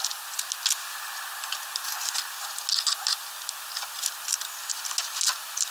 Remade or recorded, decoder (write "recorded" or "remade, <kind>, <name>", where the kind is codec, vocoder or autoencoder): recorded